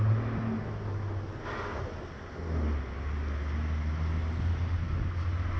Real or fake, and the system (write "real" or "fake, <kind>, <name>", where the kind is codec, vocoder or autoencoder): real